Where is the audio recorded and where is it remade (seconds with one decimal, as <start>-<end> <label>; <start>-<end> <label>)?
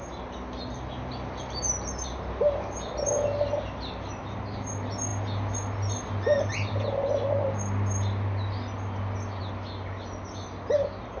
0.0-11.2 recorded